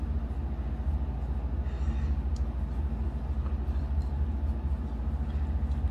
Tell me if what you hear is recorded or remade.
recorded